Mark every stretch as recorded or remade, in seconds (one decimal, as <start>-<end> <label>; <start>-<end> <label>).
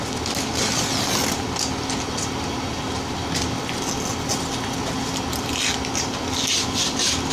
0.0-7.3 recorded